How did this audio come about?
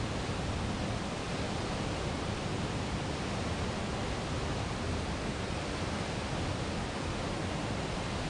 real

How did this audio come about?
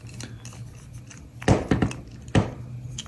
real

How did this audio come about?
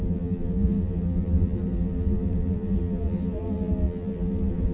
fake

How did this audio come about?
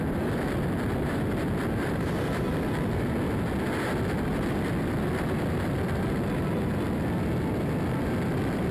fake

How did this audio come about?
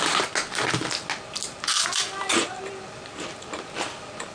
real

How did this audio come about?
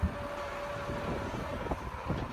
real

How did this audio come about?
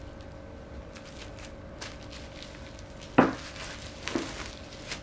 real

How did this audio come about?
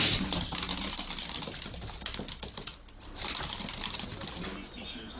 real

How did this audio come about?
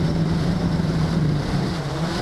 fake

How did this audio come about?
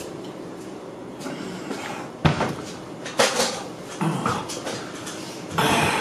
fake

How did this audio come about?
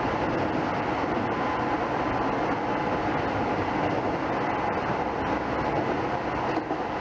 real